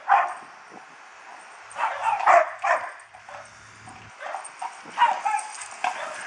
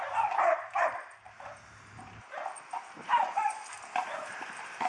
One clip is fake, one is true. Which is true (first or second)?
first